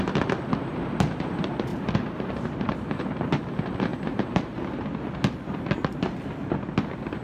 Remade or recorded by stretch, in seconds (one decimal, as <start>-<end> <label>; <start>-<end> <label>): 0.0-1.7 recorded; 1.7-3.4 remade; 3.4-3.9 recorded; 3.9-4.4 remade; 4.4-7.2 recorded